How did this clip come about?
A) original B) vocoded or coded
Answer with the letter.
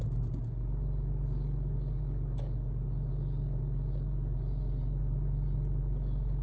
A